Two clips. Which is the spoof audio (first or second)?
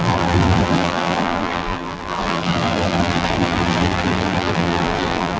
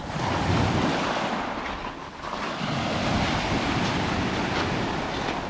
first